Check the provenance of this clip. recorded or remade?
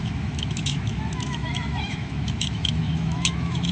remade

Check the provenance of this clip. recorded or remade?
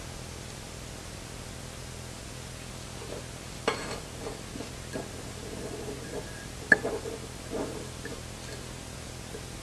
recorded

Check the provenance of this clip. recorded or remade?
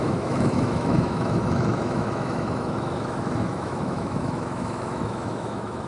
remade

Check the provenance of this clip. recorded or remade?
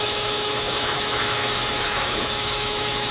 remade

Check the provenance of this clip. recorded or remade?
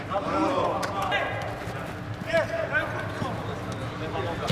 recorded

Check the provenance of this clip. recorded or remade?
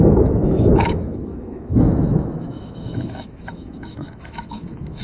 remade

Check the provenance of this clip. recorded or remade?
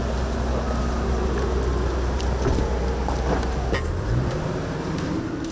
recorded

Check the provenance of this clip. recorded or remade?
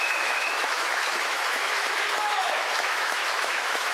remade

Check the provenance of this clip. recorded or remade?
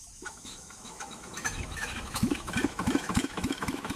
remade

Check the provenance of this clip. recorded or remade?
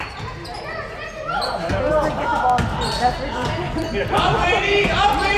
recorded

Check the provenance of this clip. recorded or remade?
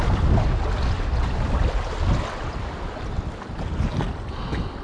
recorded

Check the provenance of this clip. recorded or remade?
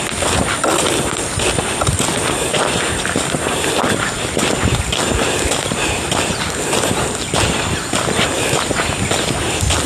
recorded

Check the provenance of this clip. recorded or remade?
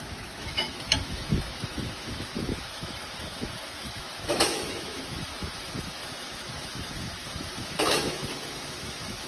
remade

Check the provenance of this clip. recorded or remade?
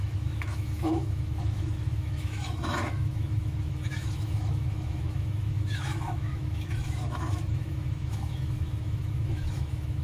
remade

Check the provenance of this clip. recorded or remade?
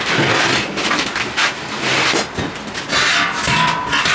recorded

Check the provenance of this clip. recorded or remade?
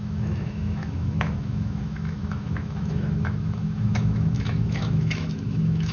remade